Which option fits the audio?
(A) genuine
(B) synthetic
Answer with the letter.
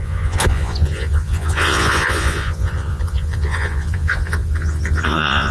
B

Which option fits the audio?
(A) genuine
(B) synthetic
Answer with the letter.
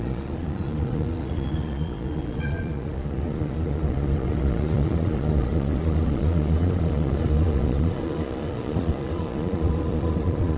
B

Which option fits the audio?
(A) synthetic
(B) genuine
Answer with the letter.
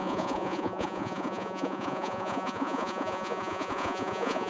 A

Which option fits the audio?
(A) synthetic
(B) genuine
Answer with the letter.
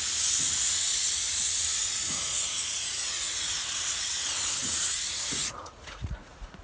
A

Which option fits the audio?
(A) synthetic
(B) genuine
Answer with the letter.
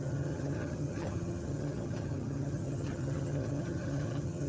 A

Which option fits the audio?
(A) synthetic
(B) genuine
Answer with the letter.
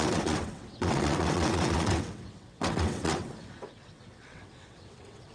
A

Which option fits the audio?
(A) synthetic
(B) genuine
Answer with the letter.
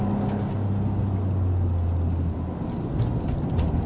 B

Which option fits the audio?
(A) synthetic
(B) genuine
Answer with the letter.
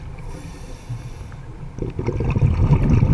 B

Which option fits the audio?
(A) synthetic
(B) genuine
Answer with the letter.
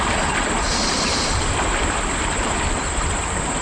B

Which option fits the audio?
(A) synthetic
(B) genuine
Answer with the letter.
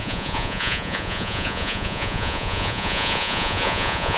A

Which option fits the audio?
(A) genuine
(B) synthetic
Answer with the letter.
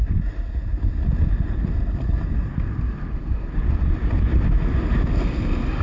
A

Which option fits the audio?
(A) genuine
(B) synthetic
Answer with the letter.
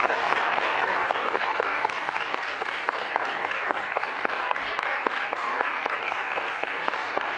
B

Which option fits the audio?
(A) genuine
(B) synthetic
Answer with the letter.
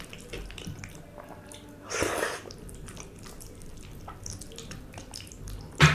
A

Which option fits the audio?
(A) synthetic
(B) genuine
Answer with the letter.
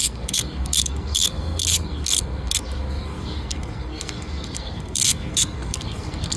A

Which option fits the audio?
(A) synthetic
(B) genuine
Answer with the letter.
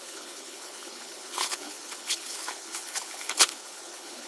A